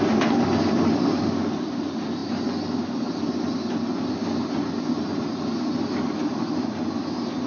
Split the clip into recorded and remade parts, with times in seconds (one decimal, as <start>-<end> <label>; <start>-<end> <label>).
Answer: 0.0-7.5 recorded